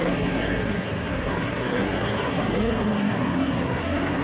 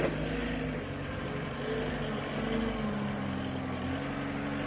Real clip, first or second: second